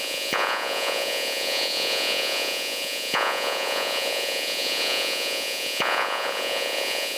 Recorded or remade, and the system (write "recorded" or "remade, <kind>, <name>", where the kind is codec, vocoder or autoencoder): remade, vocoder, Vocos